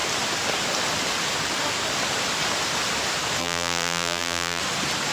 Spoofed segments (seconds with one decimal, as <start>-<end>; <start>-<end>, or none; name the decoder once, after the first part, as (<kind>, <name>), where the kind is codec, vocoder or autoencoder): 3.4-4.6 (vocoder, BigVGAN v2)